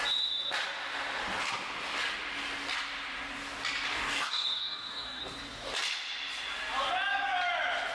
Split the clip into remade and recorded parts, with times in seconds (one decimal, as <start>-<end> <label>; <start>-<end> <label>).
0.0-3.9 recorded; 3.9-5.2 remade; 5.2-7.9 recorded